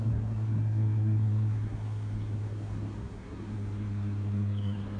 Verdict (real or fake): fake